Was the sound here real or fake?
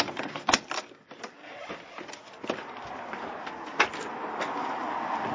real